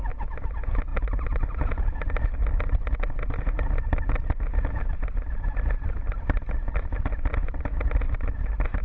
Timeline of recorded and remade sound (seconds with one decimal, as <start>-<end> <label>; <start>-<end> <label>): 0.0-8.8 recorded